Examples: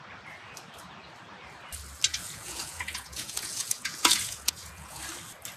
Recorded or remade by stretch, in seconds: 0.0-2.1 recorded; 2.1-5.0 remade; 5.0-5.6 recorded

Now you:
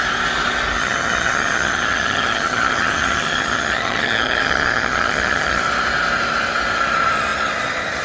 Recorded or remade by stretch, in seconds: 0.0-0.8 recorded; 0.8-5.6 remade; 5.6-8.0 recorded